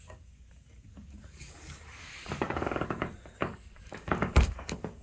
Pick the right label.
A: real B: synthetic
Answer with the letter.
B